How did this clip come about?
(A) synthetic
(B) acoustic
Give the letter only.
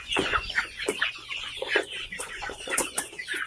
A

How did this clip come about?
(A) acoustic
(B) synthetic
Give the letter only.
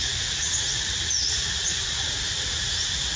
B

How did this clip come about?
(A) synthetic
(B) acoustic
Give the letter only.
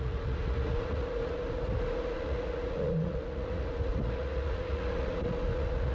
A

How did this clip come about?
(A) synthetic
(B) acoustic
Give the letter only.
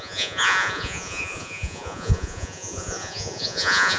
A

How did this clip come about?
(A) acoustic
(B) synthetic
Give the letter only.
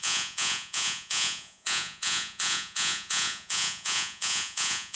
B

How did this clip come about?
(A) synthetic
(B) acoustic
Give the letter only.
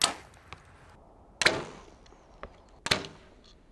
B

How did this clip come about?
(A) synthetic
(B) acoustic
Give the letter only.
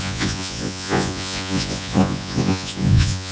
A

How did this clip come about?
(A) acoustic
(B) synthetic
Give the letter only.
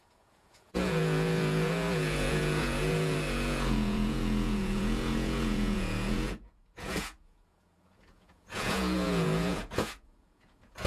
B